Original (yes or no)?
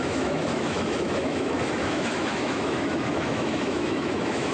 no